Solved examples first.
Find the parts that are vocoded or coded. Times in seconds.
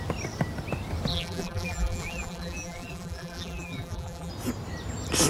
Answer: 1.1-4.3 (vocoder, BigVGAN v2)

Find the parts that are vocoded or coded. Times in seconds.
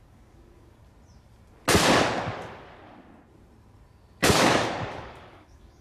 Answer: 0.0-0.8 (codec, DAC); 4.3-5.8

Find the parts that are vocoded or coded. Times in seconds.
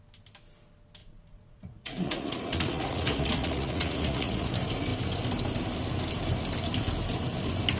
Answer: 1.0-4.5 (vocoder, Vocos)